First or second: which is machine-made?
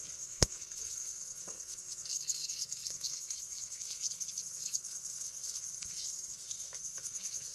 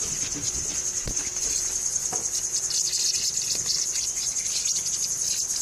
first